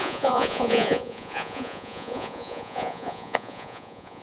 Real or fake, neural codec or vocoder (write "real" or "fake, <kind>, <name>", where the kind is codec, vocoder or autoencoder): fake, vocoder, Vocos